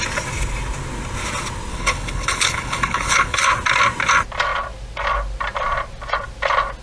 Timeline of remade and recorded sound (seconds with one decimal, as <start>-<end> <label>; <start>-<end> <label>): 0.0-1.7 recorded; 1.7-3.4 remade; 3.4-6.8 recorded